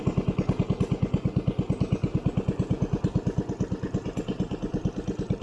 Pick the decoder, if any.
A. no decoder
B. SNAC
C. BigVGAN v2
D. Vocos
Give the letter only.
A